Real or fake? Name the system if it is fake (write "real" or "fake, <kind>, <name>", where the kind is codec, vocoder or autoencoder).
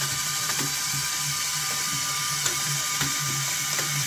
fake, vocoder, BigVGAN v2